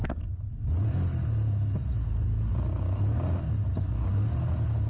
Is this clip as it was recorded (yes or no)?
yes